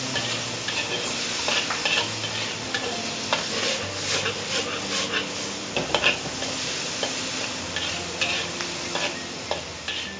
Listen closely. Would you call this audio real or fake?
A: real